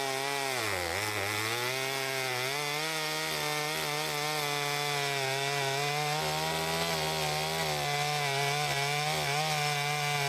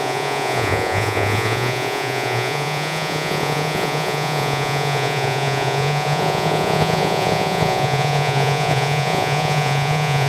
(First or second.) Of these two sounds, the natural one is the first